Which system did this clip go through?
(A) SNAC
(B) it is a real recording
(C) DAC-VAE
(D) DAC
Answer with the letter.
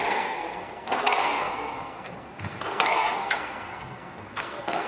A